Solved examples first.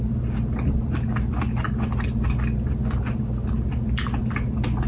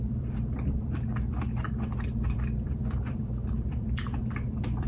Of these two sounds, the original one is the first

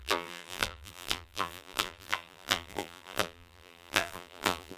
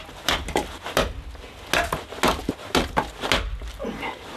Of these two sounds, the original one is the second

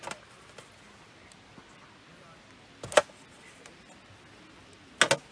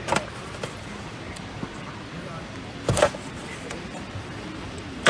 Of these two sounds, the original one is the first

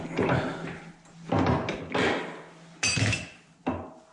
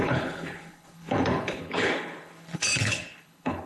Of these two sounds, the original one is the first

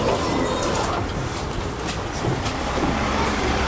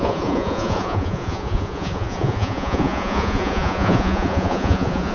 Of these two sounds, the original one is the first